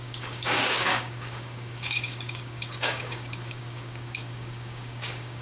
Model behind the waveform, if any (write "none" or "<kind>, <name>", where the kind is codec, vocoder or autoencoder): codec, DAC